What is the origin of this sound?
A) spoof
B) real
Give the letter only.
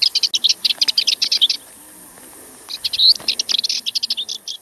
B